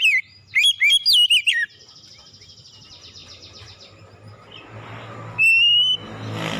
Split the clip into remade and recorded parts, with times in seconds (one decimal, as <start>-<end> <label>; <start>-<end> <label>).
0.0-6.6 recorded